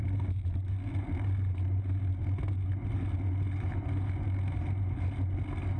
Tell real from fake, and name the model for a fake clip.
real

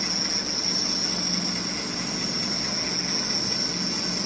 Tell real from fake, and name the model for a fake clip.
real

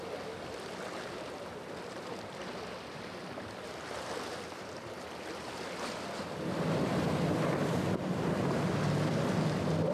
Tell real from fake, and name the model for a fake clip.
real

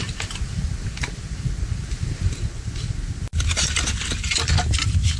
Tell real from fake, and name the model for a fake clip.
real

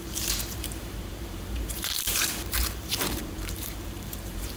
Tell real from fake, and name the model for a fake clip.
fake, vocoder, BigVGAN v2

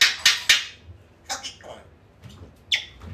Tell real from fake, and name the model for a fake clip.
real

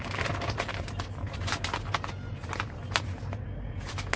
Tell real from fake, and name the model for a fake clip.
real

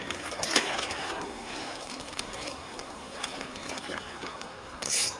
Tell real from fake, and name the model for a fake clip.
fake, codec, SNAC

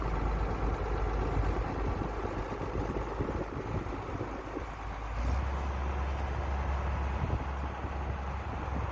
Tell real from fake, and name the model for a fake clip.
real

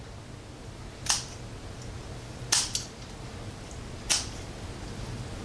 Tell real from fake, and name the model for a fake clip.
real